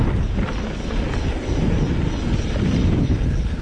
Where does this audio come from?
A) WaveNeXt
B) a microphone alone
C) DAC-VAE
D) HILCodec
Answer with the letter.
B